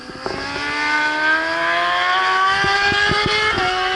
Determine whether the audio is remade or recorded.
recorded